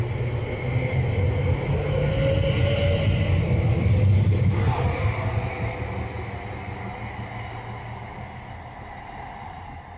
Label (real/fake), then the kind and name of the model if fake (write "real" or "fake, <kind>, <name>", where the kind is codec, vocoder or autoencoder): real